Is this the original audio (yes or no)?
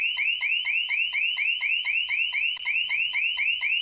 yes